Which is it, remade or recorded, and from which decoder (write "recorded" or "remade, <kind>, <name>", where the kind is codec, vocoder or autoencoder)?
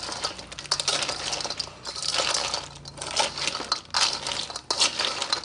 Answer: recorded